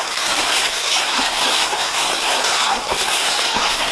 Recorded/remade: remade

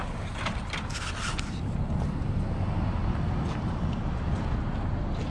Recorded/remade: recorded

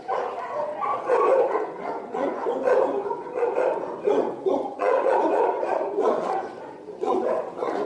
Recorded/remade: remade